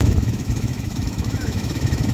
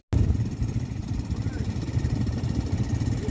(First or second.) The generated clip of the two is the first